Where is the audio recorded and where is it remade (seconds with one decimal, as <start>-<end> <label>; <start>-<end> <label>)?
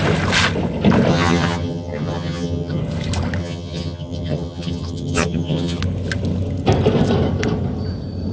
0.0-1.1 recorded; 1.1-2.8 remade; 2.8-3.4 recorded; 3.4-5.8 remade; 5.8-8.3 recorded